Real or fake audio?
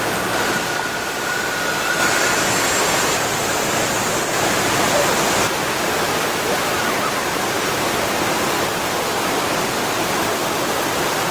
real